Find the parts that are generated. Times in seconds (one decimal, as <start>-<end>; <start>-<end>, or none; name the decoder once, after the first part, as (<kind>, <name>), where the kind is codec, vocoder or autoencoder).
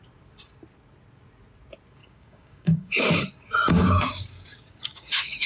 2.0-5.5 (codec, DAC)